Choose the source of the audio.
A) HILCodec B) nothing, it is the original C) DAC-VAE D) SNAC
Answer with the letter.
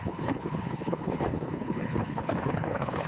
A